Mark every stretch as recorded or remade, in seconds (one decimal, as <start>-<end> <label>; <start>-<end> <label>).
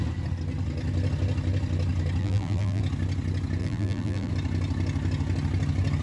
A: 0.0-2.2 recorded; 2.2-2.8 remade; 2.8-3.6 recorded; 3.6-4.3 remade; 4.3-6.0 recorded